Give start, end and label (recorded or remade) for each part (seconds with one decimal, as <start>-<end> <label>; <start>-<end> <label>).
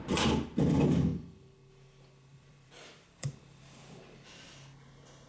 0.0-1.1 recorded; 1.1-1.7 remade; 1.7-2.3 recorded; 2.3-3.6 remade; 3.6-5.3 recorded